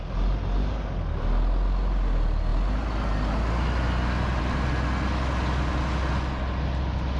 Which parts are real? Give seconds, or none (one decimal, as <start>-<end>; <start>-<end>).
0.0-7.2